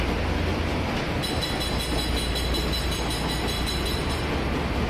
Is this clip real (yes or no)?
yes